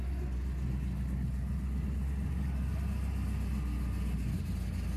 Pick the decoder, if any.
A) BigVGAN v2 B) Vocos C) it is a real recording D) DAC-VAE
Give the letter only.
C